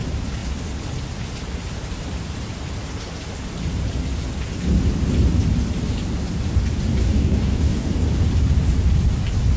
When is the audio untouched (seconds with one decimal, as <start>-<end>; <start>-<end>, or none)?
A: 0.0-7.0; 7.9-9.6